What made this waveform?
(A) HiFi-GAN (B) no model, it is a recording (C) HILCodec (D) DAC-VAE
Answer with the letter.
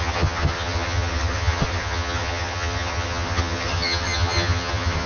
A